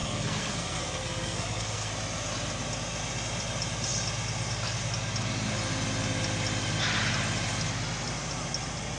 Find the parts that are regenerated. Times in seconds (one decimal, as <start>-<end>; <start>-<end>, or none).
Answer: 0.0-1.9